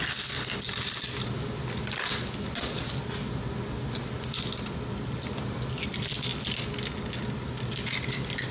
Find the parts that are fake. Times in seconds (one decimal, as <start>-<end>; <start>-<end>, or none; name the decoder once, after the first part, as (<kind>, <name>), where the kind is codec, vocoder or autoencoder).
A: none